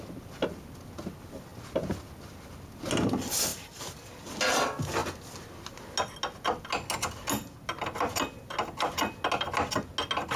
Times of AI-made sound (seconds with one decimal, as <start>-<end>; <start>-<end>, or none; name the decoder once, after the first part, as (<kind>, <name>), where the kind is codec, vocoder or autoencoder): 3.5-4.3 (vocoder, BigVGAN v2)